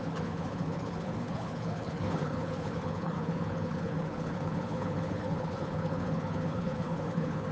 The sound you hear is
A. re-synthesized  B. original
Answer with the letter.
A